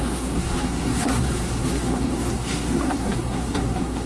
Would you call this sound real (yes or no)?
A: no